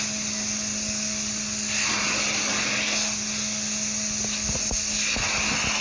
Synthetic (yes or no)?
no